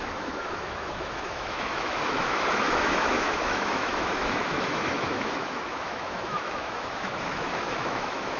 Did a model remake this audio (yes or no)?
yes